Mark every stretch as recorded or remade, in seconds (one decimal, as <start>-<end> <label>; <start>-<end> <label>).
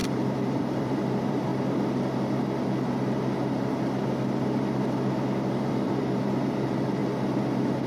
0.0-1.5 remade; 1.5-5.7 recorded; 5.7-7.0 remade; 7.0-7.9 recorded